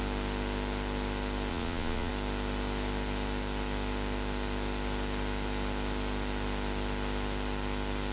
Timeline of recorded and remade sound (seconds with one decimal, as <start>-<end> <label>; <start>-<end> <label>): 0.0-1.5 recorded; 1.5-2.1 remade; 2.1-8.1 recorded